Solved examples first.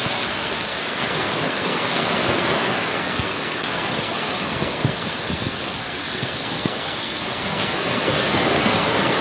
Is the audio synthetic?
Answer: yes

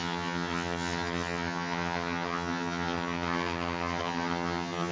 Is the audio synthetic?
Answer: yes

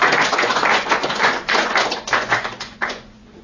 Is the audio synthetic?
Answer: yes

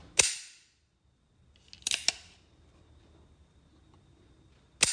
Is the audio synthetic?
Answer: no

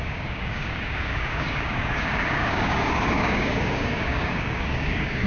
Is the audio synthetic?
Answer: yes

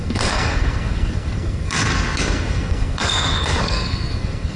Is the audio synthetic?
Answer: yes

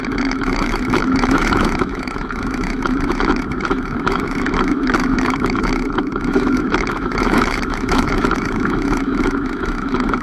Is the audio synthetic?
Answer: yes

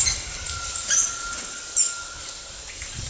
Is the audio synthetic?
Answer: no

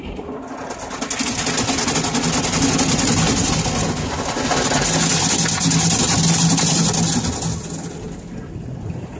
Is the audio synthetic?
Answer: no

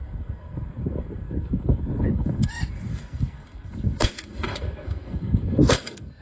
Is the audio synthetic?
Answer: yes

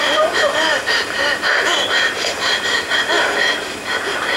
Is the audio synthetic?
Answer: yes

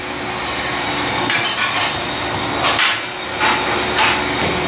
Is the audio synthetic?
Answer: no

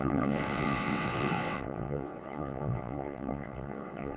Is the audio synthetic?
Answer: yes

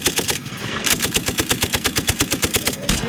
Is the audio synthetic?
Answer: yes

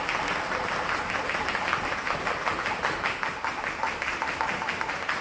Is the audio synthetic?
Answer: no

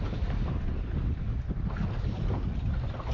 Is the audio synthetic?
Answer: no